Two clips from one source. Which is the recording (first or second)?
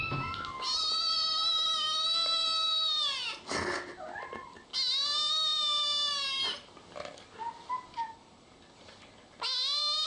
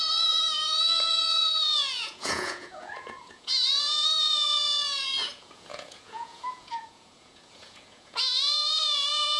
first